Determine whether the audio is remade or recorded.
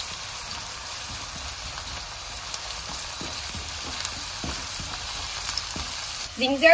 remade